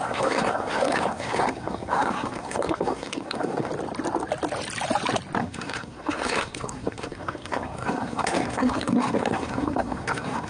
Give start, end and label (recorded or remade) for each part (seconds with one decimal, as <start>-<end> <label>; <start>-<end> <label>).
0.0-3.7 remade; 3.7-5.4 recorded; 5.4-10.5 remade